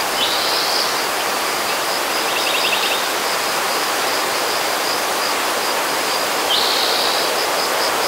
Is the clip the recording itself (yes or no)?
yes